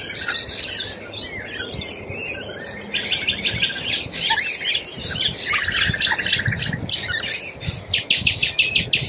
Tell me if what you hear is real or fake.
real